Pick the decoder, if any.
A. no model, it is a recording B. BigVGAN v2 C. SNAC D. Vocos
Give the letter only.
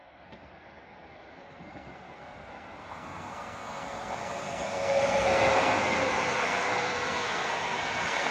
C